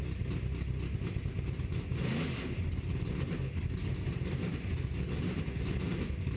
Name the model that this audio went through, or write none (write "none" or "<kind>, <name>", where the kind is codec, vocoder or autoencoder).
none